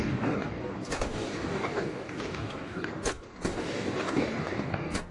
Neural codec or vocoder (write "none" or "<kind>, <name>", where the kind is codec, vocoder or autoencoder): codec, DAC